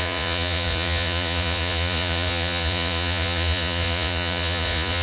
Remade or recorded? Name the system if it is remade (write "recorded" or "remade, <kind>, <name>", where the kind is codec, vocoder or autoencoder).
remade, vocoder, Vocos